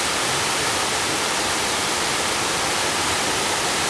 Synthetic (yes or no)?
no